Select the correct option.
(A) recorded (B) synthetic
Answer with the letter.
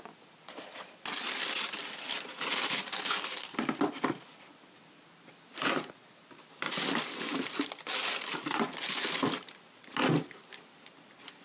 A